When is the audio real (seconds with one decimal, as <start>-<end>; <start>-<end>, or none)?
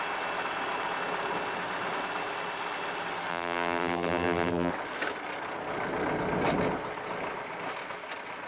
0.0-3.3; 4.7-8.5